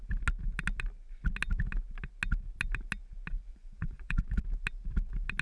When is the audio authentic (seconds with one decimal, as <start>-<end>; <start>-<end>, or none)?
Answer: 0.0-3.5; 4.4-5.4